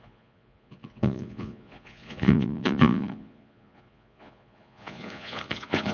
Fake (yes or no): yes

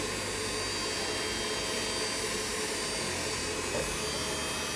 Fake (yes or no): no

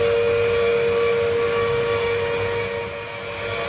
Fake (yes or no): no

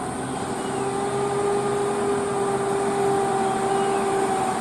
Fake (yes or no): no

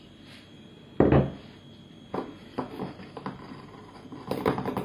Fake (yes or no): no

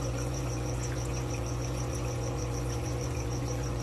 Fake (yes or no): yes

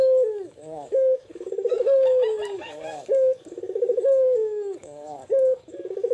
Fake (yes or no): yes